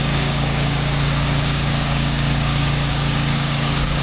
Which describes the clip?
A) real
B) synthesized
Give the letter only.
B